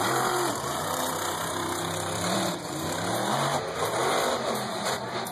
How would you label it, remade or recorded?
remade